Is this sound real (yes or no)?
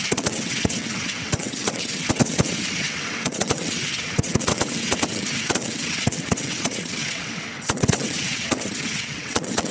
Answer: no